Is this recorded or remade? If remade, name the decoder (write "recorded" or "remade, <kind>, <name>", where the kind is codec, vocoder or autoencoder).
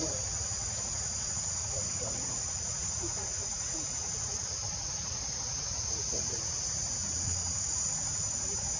remade, vocoder, Vocos